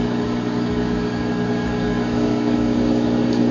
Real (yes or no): no